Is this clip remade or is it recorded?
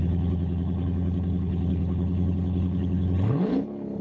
remade